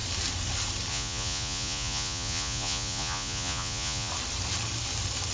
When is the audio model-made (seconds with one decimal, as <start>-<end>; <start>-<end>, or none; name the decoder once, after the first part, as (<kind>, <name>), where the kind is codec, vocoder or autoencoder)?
0.9-4.1 (vocoder, Vocos)